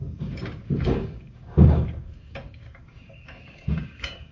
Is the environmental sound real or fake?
fake